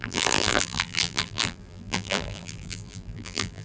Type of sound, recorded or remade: remade